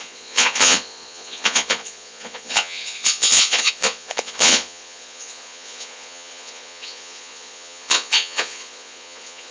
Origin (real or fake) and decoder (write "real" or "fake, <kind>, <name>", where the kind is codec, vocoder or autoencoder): fake, vocoder, Vocos